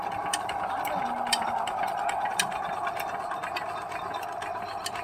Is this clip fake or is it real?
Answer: real